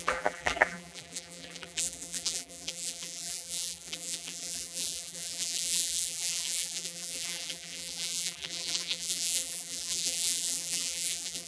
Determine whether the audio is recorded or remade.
remade